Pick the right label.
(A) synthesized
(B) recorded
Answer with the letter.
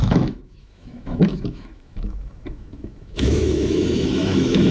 A